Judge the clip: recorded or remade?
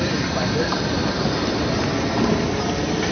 recorded